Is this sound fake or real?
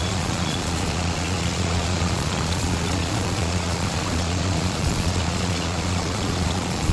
fake